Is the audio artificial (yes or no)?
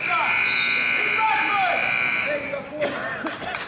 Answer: yes